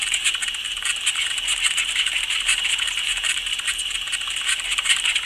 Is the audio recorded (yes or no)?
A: no